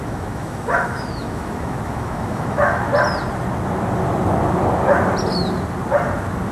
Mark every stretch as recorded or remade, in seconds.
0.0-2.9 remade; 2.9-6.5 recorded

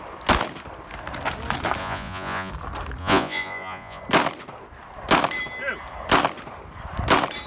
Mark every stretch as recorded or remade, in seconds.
0.0-1.8 recorded; 1.8-2.5 remade; 2.5-3.0 recorded; 3.0-4.0 remade; 4.0-7.5 recorded